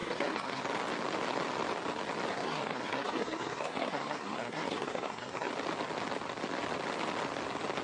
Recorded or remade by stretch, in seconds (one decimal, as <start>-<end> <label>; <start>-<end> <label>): 0.0-0.6 remade; 0.6-2.3 recorded; 2.3-5.5 remade; 5.5-7.8 recorded